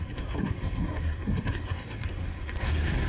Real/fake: fake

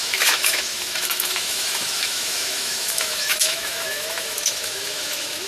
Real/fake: fake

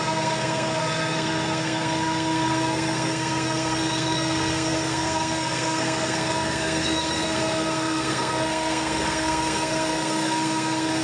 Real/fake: fake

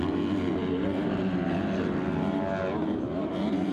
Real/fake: real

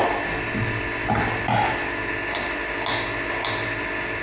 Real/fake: real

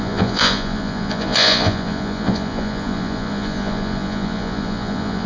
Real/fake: fake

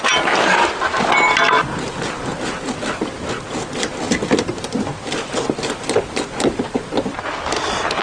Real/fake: real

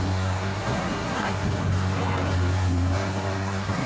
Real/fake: fake